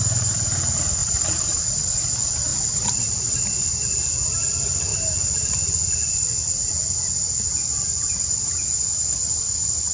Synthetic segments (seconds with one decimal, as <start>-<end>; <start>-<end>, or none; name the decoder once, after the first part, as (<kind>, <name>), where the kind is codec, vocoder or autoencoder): 1.0-1.6 (vocoder, BigVGAN v2)